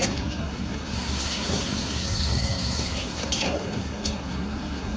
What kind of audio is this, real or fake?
fake